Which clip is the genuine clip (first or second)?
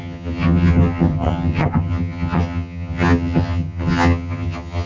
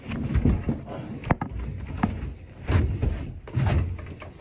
second